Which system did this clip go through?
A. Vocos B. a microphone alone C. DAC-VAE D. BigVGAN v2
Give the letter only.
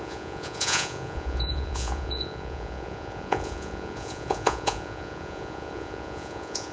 A